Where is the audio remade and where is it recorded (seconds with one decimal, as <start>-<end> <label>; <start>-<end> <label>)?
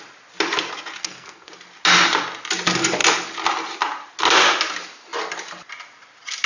0.0-1.0 recorded; 1.0-1.5 remade; 1.5-6.5 recorded